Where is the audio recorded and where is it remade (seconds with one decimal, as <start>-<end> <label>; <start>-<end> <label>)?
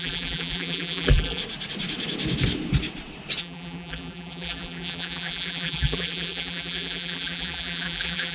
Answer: 0.0-1.4 remade; 1.4-3.4 recorded; 3.4-8.3 remade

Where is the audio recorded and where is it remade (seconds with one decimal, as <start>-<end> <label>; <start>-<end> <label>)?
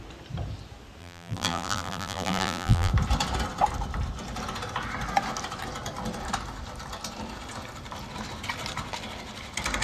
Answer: 0.0-1.0 recorded; 1.0-2.9 remade; 2.9-9.8 recorded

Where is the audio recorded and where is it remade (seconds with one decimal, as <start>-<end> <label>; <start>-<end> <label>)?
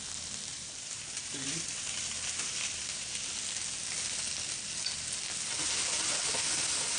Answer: 0.0-0.5 recorded; 0.5-3.2 remade; 3.2-7.0 recorded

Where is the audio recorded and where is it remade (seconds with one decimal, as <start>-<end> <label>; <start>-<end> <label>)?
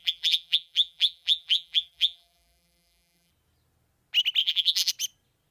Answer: 0.0-3.3 remade; 3.3-4.4 recorded; 4.4-4.9 remade; 4.9-5.5 recorded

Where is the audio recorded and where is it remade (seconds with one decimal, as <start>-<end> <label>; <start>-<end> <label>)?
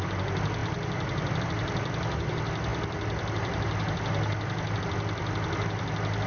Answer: 0.0-6.3 recorded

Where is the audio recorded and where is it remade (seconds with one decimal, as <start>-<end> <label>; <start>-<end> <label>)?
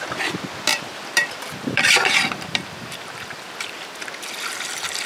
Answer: 0.0-0.7 recorded; 0.7-3.8 remade; 3.8-5.1 recorded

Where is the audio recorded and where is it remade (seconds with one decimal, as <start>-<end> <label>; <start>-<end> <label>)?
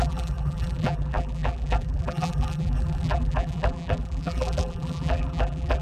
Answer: 0.0-5.8 remade